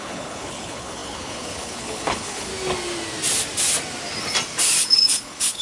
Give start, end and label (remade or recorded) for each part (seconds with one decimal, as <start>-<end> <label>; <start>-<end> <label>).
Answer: 0.0-2.5 remade; 2.5-4.8 recorded; 4.8-5.6 remade